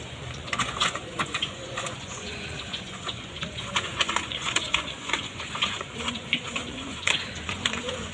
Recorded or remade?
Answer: remade